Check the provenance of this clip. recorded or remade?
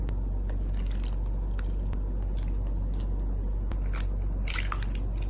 recorded